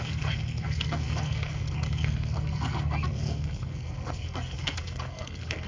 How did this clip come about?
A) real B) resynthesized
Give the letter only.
B